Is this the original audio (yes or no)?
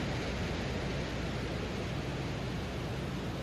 yes